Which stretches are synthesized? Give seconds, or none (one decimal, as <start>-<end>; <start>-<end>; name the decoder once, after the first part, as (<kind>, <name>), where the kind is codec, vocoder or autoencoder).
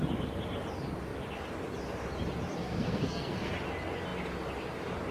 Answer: 2.6-3.5 (codec, SNAC)